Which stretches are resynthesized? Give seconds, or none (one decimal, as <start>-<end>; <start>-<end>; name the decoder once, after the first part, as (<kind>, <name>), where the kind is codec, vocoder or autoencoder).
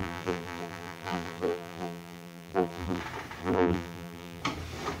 0.0-3.0 (vocoder, BigVGAN v2); 3.4-4.4